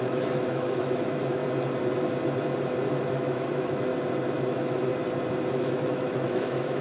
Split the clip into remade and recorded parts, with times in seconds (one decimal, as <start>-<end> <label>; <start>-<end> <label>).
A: 0.0-1.4 remade; 1.4-3.1 recorded; 3.1-3.9 remade; 3.9-4.5 recorded; 4.5-4.9 remade; 4.9-5.5 recorded; 5.5-6.8 remade